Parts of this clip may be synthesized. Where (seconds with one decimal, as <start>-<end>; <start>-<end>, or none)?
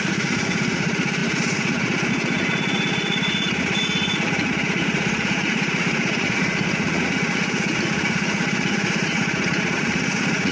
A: 0.0-10.5